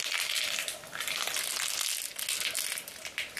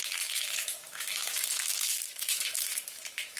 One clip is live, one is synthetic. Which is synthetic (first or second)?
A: second